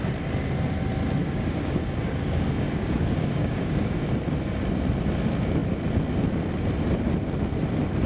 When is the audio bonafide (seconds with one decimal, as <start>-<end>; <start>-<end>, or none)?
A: 0.0-1.2; 4.1-8.1